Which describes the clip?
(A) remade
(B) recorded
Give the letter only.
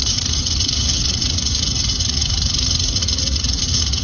A